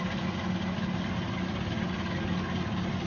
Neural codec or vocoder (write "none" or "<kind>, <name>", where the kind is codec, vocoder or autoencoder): none